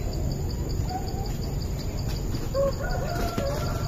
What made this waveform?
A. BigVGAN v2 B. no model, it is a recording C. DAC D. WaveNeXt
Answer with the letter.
B